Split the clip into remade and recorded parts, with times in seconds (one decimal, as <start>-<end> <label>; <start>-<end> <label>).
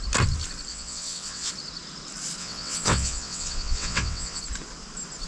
0.0-0.7 recorded; 0.7-1.5 remade; 1.5-2.4 recorded; 2.4-4.4 remade; 4.4-5.3 recorded